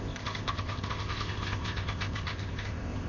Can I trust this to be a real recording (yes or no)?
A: no